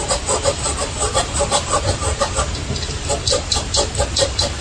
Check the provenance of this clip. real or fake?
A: real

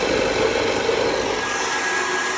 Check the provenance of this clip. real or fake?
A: real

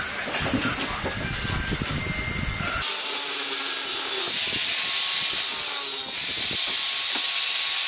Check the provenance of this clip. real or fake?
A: real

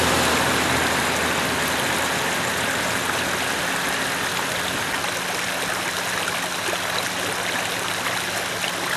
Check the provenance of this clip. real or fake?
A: real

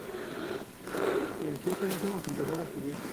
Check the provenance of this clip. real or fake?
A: fake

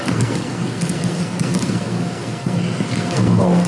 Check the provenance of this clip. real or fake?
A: fake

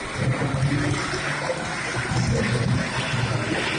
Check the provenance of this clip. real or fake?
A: real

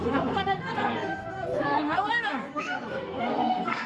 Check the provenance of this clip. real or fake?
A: fake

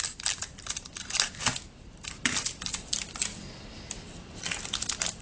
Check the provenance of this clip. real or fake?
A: real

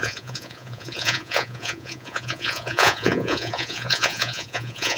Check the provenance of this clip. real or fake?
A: fake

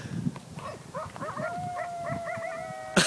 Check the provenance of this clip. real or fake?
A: real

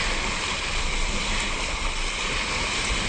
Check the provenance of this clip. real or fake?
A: real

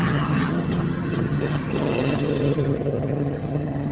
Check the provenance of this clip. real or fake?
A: fake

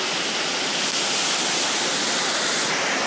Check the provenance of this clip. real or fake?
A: real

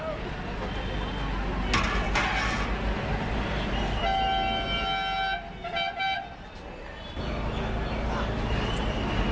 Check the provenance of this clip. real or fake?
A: real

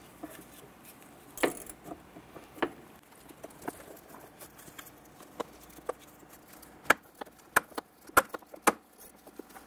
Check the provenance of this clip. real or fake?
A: real